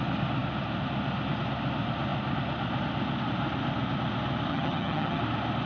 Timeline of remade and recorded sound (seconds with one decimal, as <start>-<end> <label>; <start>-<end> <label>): 0.0-4.5 recorded; 4.5-5.2 remade; 5.2-5.7 recorded